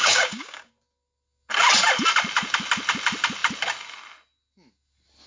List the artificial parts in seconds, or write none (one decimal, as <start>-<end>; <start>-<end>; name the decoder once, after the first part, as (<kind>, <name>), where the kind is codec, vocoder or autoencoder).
0.0-0.7 (codec, DAC)